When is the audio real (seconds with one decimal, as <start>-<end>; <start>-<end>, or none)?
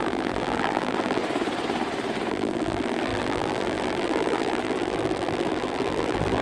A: 1.2-2.3